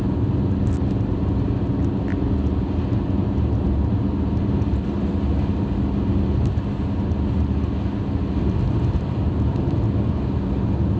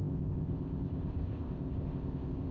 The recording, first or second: first